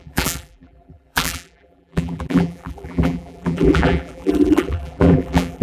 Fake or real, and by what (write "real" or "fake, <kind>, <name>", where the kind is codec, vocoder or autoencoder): fake, vocoder, BigVGAN v2